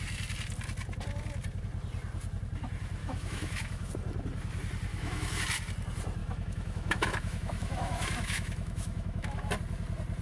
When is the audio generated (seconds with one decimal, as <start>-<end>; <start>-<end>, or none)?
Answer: 3.0-3.9; 4.9-5.4; 6.2-9.5